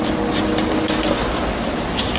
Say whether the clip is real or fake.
real